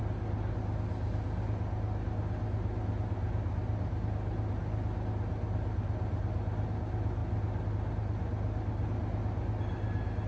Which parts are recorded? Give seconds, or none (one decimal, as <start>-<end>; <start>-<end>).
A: 0.0-10.3